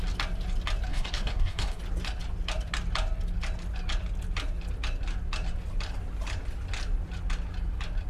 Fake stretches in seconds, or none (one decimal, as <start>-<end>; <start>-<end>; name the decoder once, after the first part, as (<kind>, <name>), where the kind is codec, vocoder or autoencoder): 0.9-1.8 (codec, DAC)